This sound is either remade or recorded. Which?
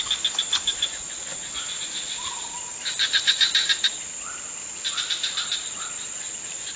recorded